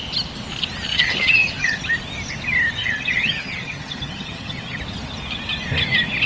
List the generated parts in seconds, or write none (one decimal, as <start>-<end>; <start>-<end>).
0.9-1.8; 2.8-4.8